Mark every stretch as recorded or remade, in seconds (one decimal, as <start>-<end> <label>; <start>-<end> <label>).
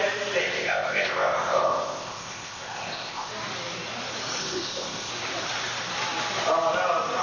0.0-0.4 recorded; 0.4-3.3 remade; 3.3-4.4 recorded; 4.4-5.1 remade; 5.1-7.2 recorded